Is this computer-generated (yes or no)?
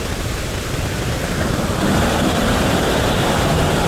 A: yes